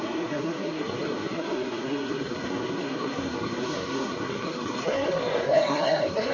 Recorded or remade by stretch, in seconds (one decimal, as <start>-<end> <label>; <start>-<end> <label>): 0.0-6.3 remade